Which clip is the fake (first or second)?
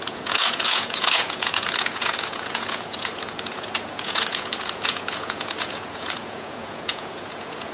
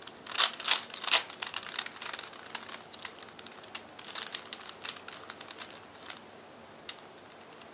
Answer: first